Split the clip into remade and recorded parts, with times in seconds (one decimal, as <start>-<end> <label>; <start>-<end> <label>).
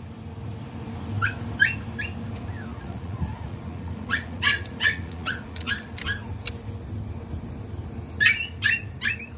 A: 0.0-2.7 recorded; 2.7-5.7 remade; 5.7-9.4 recorded